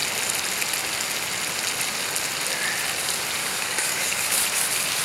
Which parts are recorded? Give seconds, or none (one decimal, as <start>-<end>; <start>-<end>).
0.0-3.4; 4.4-5.0